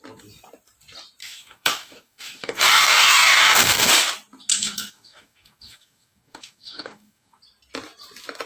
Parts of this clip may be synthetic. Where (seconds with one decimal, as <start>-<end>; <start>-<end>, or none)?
1.2-3.9; 4.5-7.4